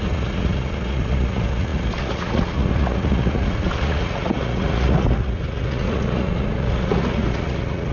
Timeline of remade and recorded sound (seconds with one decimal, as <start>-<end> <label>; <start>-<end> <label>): 0.0-7.9 remade